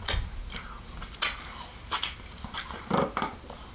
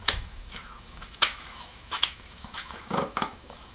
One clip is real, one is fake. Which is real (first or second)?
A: first